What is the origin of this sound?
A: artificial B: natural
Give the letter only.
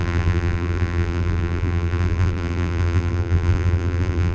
A